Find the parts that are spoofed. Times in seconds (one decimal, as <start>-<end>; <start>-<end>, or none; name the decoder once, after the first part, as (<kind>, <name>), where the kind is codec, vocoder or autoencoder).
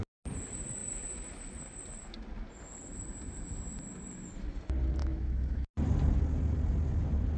5.0-5.7 (autoencoder, DAC-VAE)